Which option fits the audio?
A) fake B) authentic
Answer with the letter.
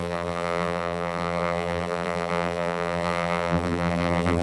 A